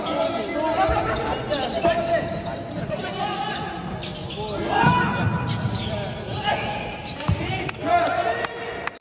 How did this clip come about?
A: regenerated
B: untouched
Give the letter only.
B